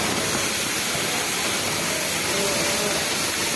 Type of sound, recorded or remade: recorded